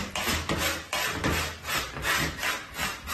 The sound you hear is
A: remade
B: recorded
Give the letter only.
B